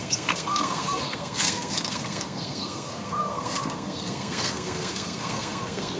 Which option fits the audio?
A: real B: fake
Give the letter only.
B